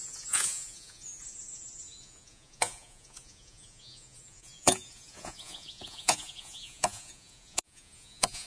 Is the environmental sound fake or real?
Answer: fake